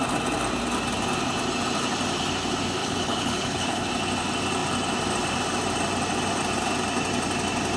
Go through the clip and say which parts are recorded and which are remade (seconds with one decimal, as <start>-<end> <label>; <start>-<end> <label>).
0.0-2.8 recorded; 2.8-3.9 remade; 3.9-7.8 recorded